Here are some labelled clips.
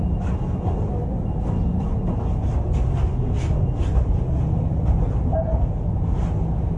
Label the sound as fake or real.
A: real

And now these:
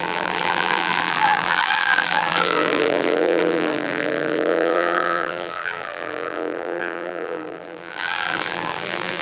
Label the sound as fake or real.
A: fake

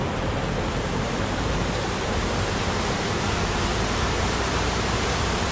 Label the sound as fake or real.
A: fake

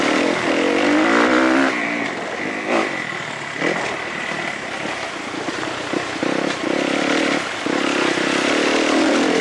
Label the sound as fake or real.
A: fake